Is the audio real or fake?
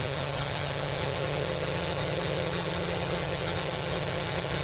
fake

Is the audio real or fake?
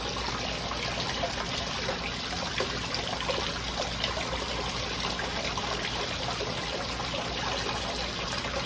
real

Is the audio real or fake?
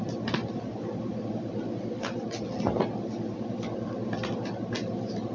real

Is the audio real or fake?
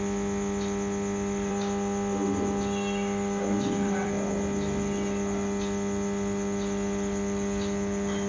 real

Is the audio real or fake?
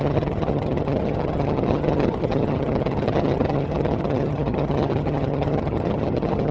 fake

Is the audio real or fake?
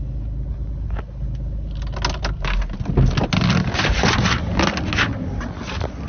real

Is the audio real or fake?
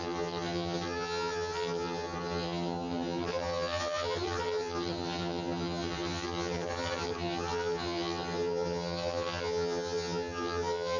fake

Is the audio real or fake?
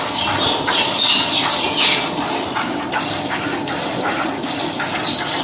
real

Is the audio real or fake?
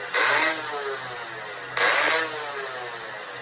real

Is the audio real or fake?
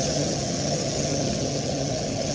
fake